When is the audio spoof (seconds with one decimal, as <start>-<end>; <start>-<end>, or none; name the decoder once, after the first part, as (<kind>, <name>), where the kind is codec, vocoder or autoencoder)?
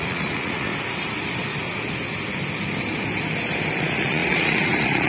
0.0-0.7 (vocoder, Vocos); 3.8-5.1